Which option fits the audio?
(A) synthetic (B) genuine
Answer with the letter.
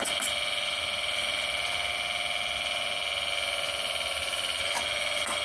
B